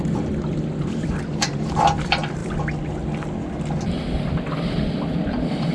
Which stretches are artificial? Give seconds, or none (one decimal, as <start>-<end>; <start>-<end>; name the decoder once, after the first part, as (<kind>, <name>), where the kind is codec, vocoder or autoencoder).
0.0-2.4 (vocoder, BigVGAN v2); 4.4-5.7